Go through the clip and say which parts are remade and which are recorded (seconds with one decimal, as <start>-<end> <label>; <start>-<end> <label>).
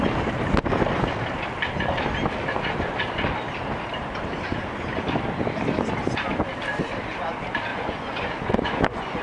0.0-7.7 recorded; 7.7-9.2 remade